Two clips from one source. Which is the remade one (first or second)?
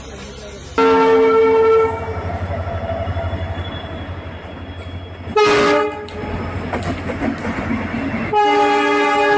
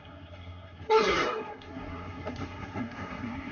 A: second